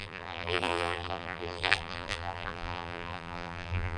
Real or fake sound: fake